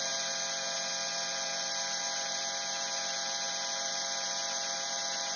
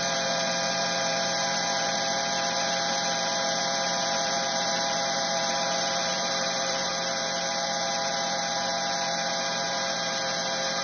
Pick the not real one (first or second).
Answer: second